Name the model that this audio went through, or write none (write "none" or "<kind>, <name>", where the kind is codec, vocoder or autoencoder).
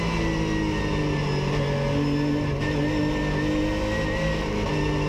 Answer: none